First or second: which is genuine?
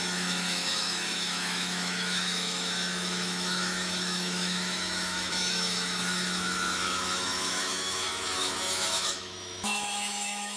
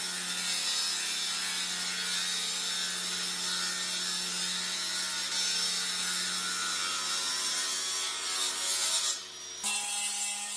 second